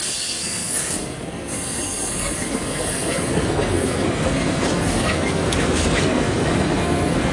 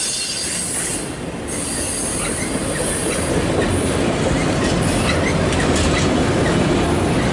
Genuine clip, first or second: second